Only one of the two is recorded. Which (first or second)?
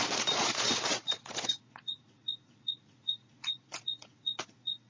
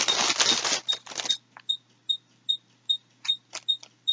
second